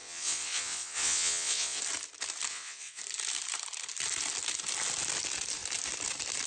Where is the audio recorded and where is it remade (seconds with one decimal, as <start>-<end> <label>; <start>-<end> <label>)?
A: 0.0-1.8 remade; 1.8-2.5 recorded; 2.5-3.0 remade; 3.0-6.5 recorded